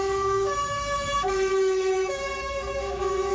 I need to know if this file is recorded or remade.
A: remade